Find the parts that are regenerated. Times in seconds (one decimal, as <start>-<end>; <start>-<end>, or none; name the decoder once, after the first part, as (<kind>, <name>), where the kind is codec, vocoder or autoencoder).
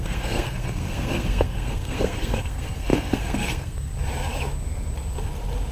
0.0-3.9 (codec, SNAC)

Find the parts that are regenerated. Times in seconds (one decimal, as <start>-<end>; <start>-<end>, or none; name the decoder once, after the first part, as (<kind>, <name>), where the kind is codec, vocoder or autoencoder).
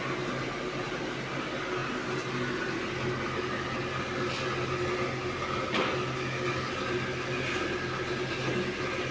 none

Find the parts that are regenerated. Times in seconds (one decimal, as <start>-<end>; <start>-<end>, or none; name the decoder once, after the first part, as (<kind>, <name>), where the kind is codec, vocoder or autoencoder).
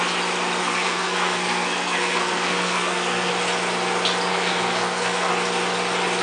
0.6-3.3 (codec, SNAC); 4.3-5.3